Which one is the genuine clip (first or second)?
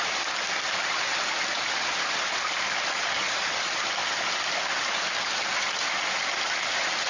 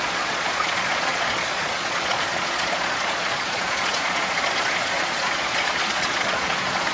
first